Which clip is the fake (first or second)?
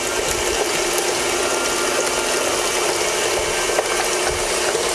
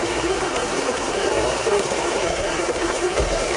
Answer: second